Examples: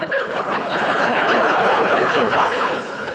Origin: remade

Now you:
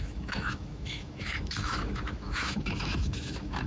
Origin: remade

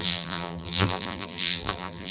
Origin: remade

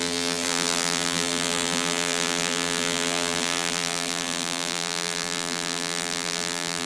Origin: remade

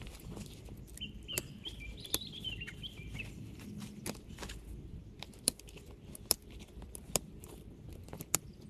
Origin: recorded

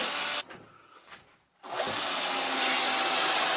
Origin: recorded